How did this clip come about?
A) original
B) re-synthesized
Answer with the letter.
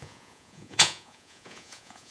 B